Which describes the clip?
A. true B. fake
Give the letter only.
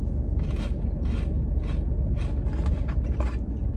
A